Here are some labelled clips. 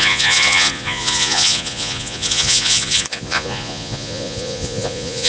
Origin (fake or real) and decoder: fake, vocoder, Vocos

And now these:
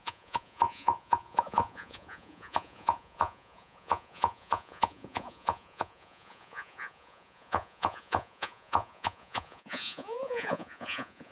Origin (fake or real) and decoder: fake, vocoder, Vocos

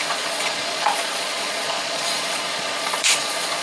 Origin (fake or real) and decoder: fake, vocoder, Vocos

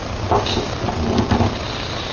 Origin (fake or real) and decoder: real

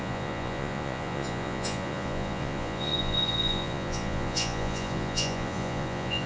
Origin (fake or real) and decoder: fake, vocoder, Vocos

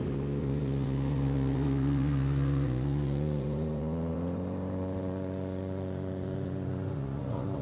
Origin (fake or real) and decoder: fake, vocoder, Vocos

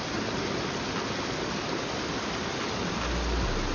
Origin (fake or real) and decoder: real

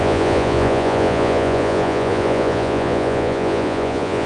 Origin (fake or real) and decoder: fake, vocoder, Vocos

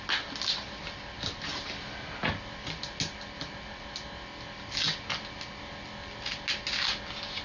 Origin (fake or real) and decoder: real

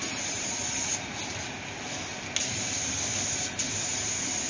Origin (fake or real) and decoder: real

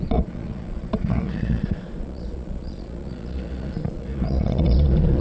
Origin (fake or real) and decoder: fake, vocoder, Vocos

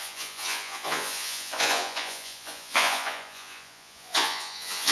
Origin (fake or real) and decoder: fake, vocoder, Vocos